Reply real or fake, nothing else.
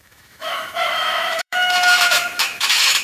fake